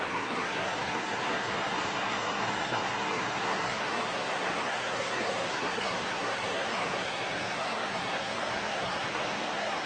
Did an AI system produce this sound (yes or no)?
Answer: yes